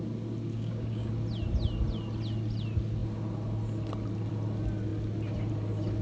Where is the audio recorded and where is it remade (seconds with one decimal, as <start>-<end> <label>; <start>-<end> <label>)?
0.0-0.5 recorded; 0.5-1.1 remade; 1.1-6.0 recorded